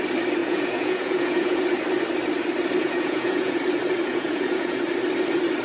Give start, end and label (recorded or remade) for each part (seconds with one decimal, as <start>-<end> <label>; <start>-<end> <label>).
0.0-0.4 recorded; 0.4-1.6 remade; 1.6-2.8 recorded; 2.8-3.6 remade; 3.6-4.1 recorded; 4.1-4.8 remade; 4.8-5.6 recorded